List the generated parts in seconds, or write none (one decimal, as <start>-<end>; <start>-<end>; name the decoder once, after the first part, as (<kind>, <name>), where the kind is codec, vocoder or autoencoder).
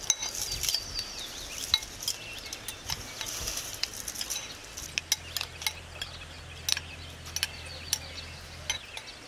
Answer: none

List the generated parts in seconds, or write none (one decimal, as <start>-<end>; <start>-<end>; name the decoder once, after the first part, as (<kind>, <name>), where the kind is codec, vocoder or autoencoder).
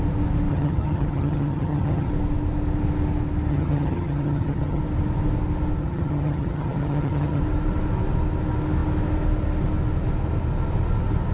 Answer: 0.5-2.1 (vocoder, HiFi-GAN); 3.5-4.8; 5.8-7.4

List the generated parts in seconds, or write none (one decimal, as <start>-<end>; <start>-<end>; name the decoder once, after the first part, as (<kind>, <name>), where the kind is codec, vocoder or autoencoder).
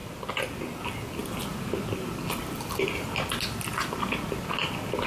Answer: none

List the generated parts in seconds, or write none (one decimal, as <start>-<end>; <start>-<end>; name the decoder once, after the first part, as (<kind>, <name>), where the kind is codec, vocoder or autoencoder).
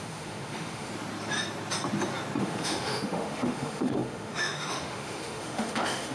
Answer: 0.0-0.9 (autoencoder, DAC-VAE); 2.4-6.1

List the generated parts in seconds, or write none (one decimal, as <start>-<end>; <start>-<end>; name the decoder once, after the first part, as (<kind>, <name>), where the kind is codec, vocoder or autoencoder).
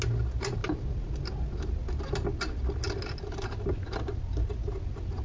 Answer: none